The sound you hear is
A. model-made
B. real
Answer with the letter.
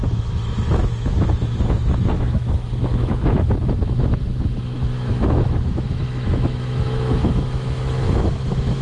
A